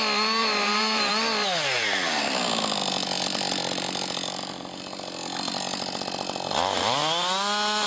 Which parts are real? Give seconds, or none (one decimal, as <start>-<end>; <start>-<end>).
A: 0.0-0.4; 1.1-7.9